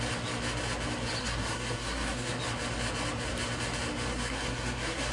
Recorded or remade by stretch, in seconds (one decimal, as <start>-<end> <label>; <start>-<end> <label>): 0.0-1.2 recorded; 1.2-2.4 remade; 2.4-4.1 recorded; 4.1-5.1 remade

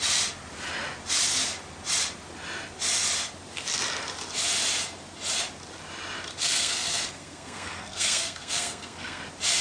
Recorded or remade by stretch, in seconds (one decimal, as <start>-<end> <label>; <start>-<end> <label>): 0.0-6.4 recorded; 6.4-9.2 remade; 9.2-9.6 recorded

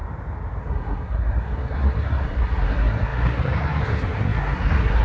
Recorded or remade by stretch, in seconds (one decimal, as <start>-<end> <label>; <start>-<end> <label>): 0.0-0.6 recorded; 0.6-5.0 remade

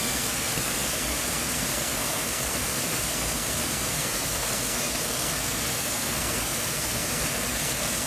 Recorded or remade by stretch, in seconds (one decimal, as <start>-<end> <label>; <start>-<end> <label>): 0.0-8.1 remade

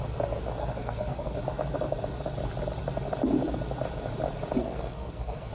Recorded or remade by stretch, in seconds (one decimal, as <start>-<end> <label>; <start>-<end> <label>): 0.0-0.6 recorded; 0.6-1.4 remade; 1.4-4.6 recorded; 4.6-5.5 remade

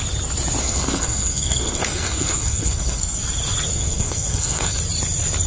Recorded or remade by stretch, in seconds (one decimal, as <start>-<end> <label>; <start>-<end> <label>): 0.0-0.6 recorded; 0.6-3.2 remade; 3.2-3.7 recorded; 3.7-4.8 remade; 4.8-5.5 recorded

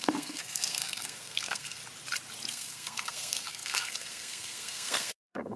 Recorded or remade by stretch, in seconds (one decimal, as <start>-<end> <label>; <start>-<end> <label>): 0.0-1.8 remade; 1.8-2.5 recorded; 2.5-5.6 remade